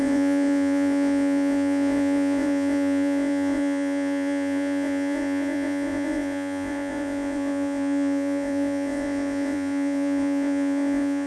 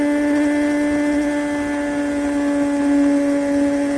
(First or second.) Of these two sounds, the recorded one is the second